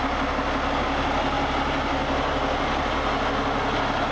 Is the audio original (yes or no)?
yes